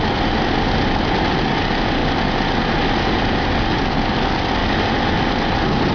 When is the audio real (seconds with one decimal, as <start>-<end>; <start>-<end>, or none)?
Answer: 0.0-5.9